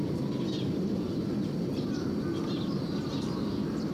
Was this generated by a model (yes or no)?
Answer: no